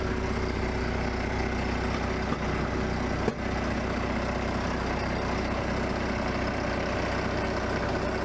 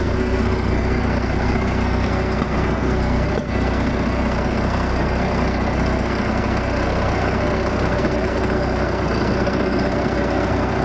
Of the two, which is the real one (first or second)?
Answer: first